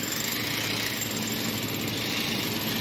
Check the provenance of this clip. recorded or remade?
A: recorded